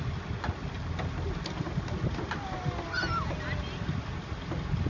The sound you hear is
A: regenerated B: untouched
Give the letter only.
B